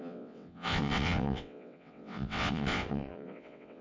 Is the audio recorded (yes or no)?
no